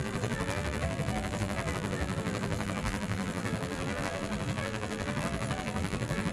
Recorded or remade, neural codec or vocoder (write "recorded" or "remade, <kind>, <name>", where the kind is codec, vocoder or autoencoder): remade, vocoder, BigVGAN v2